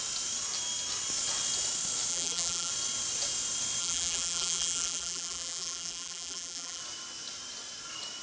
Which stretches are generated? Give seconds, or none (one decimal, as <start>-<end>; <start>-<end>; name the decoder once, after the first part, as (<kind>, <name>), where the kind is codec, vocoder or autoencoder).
2.1-2.7 (vocoder, BigVGAN v2); 3.8-6.8